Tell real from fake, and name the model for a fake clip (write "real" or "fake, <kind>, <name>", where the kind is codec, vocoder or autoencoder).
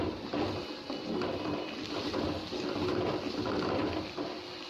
real